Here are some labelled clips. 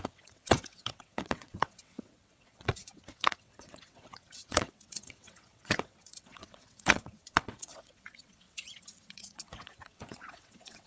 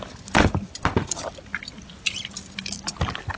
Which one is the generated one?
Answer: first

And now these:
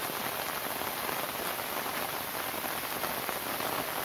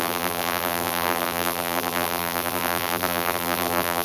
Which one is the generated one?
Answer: second